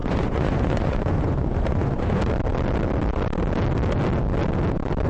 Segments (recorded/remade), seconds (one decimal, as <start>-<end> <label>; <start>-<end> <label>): 0.0-2.2 remade; 2.2-5.1 recorded